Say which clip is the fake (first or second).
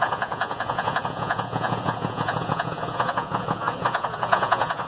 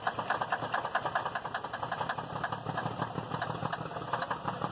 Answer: first